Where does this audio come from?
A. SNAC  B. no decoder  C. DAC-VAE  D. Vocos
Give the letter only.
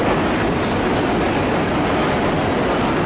B